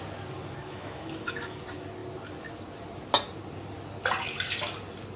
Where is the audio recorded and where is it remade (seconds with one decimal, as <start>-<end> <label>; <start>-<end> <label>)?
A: 0.0-0.6 recorded; 0.6-1.6 remade; 1.6-5.2 recorded